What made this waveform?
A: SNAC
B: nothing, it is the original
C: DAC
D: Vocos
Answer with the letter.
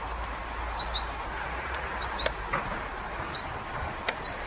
B